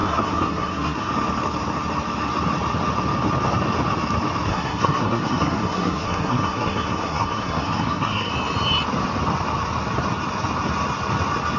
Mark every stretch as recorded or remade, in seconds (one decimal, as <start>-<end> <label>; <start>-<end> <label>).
0.0-1.1 remade; 1.1-4.5 recorded; 4.5-8.3 remade; 8.3-11.6 recorded